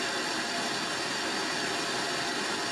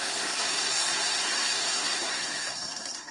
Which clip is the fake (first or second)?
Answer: second